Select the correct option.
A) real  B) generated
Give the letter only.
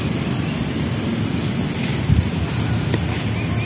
A